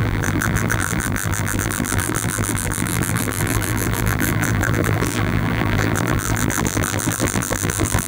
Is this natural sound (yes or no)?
no